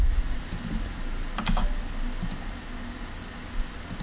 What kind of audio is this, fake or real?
real